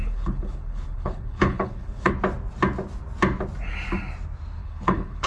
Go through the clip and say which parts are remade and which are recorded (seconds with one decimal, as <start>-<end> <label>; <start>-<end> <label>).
0.0-2.1 remade; 2.1-4.6 recorded; 4.6-5.3 remade